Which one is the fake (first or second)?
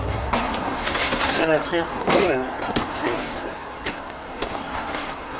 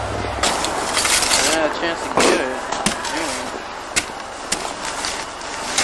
first